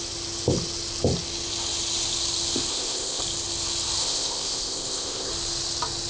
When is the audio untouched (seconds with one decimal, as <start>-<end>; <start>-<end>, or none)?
0.0-2.7; 3.2-4.0; 5.3-6.1